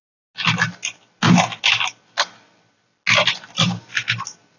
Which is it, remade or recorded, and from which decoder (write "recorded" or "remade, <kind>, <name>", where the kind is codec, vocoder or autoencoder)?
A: recorded